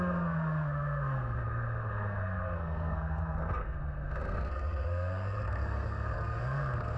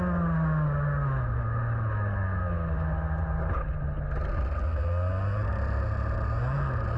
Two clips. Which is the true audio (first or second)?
second